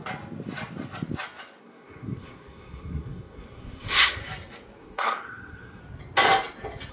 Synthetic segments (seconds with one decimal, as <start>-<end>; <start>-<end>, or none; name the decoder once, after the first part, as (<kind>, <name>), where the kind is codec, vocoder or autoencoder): 1.6-4.2 (codec, SNAC); 4.8-5.8